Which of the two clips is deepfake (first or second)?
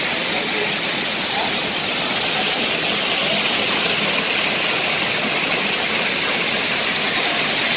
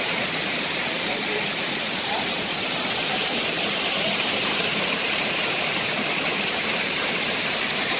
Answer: second